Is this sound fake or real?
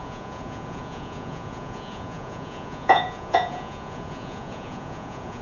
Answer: fake